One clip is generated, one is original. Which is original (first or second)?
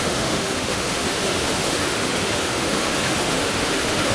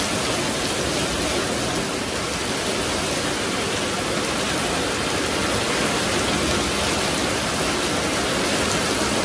second